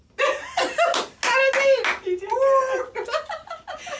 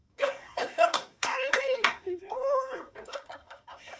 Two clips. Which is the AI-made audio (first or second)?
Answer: second